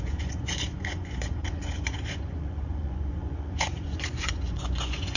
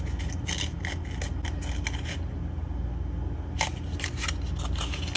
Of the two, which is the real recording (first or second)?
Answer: second